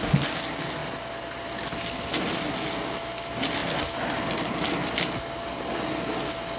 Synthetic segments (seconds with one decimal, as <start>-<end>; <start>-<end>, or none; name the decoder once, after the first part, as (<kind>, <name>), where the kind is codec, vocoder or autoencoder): none